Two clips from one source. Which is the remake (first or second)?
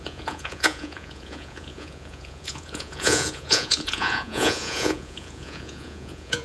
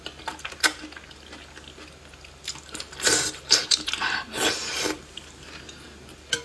first